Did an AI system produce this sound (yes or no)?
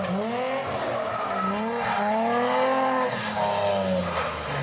no